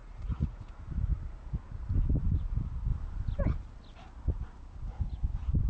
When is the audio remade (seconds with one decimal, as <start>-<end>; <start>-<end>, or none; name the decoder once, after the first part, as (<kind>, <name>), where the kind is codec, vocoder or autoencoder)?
0.0-0.7 (vocoder, Vocos)